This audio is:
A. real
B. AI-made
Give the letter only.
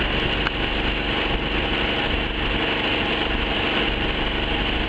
A